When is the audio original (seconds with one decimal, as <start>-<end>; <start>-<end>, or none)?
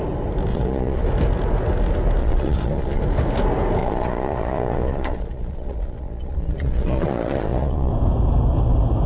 0.0-0.5; 1.0-2.2; 3.0-3.8; 7.9-9.1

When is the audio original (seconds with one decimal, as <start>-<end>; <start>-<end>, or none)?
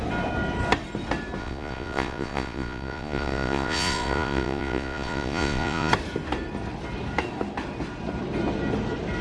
0.0-1.4; 5.9-9.2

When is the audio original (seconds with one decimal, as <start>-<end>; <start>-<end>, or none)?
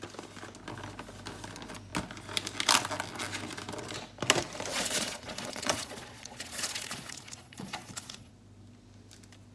0.0-4.7; 8.3-9.5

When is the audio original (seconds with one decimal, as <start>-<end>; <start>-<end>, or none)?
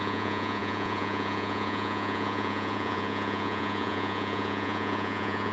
none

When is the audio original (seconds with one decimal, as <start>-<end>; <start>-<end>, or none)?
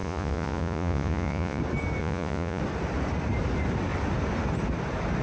1.6-2.0; 2.6-5.2